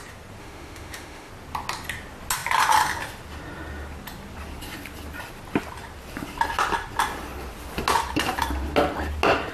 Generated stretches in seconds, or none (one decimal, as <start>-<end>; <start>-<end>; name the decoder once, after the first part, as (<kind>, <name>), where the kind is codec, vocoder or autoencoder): 0.4-1.3 (autoencoder, DAC-VAE)